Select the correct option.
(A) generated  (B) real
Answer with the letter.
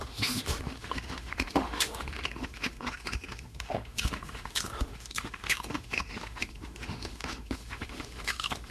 A